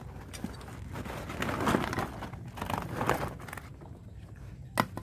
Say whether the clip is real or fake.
real